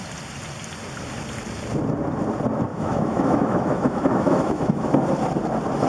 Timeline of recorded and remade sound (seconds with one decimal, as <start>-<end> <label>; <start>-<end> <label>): 0.0-2.7 recorded; 2.7-5.1 remade; 5.1-5.9 recorded

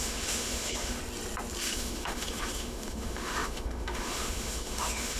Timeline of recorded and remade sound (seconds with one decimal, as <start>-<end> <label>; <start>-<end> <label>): 0.0-1.0 remade; 1.0-1.6 recorded; 1.6-5.2 remade

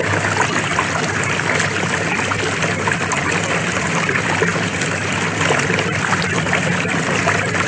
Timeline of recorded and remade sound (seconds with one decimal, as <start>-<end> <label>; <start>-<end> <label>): 0.0-7.7 recorded

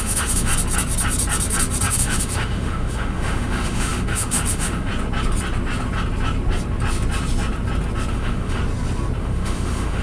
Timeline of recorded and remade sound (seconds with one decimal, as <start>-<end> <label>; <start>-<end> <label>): 0.0-0.5 remade; 0.5-1.9 recorded; 1.9-4.9 remade; 4.9-8.1 recorded; 8.1-8.6 remade; 8.6-9.2 recorded; 9.2-10.0 remade